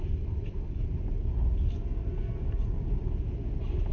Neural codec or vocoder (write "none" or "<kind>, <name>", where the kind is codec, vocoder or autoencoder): none